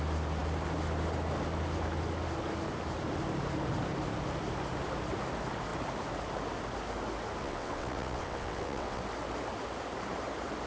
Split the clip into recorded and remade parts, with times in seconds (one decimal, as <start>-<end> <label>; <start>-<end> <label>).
0.0-7.4 recorded; 7.4-9.0 remade; 9.0-10.7 recorded